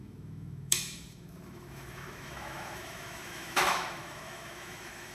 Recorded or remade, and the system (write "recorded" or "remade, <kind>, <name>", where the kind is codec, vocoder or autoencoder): remade, autoencoder, DAC-VAE